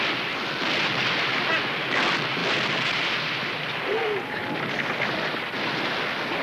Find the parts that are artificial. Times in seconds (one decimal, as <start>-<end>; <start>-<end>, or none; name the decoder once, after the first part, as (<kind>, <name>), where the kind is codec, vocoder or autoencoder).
2.4-5.8 (vocoder, BigVGAN v2)